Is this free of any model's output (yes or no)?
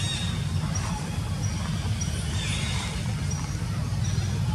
yes